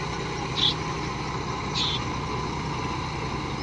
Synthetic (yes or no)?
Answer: no